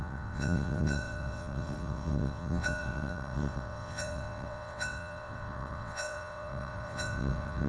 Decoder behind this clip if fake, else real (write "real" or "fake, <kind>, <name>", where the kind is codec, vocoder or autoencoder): fake, vocoder, WaveNeXt